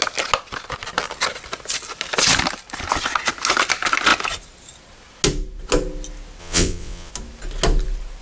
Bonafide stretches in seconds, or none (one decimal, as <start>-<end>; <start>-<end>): 0.0-6.4; 7.1-8.2